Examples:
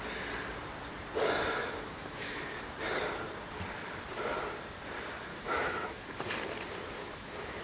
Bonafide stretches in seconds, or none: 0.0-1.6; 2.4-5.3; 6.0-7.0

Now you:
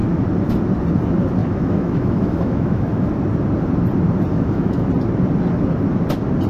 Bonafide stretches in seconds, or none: 0.0-1.4; 3.1-4.3; 4.9-6.5

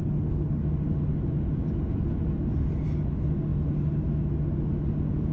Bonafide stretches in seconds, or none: 0.0-5.3

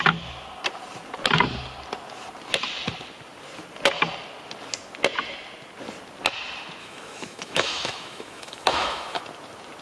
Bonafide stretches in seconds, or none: 0.0-6.8; 9.2-9.8

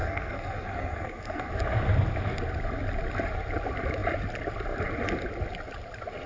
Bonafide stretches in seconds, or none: 1.5-6.3

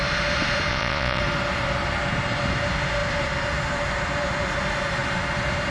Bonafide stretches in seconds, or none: 0.0-0.7; 1.2-5.7